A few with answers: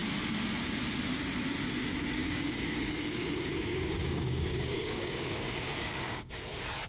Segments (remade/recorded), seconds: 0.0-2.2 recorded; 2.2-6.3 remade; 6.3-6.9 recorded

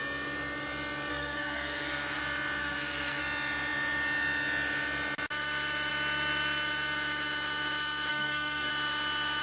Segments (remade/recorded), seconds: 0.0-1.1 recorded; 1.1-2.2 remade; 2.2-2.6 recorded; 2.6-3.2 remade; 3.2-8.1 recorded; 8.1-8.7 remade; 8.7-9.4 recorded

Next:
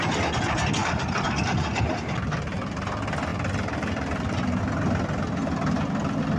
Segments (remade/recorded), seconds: 0.0-0.8 recorded; 0.8-1.8 remade; 1.8-3.3 recorded; 3.3-4.6 remade; 4.6-6.4 recorded